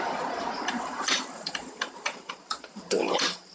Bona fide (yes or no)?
no